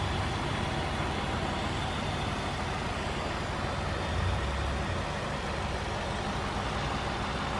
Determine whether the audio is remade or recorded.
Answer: recorded